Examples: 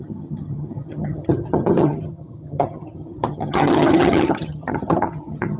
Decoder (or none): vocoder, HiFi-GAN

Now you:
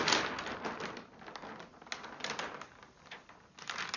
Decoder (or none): none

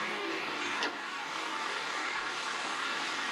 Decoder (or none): codec, DAC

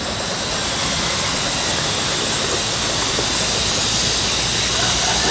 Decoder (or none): none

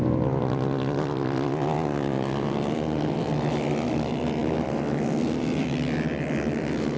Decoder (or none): none